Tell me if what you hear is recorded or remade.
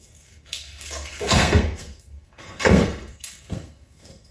remade